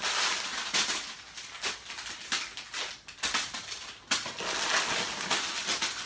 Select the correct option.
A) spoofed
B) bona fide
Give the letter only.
B